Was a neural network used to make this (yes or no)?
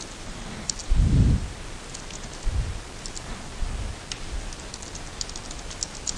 no